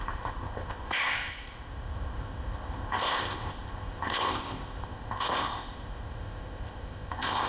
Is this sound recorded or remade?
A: remade